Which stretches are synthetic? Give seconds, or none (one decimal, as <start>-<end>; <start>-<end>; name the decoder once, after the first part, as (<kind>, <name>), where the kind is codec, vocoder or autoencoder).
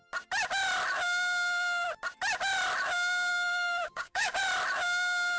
3.3-4.4 (codec, DAC)